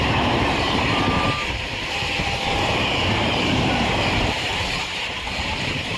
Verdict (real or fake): fake